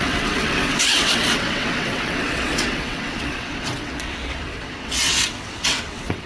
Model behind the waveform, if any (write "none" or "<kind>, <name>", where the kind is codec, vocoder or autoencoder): vocoder, WaveNeXt